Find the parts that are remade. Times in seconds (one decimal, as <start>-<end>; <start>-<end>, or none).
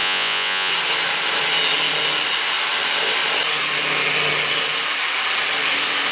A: 0.0-0.7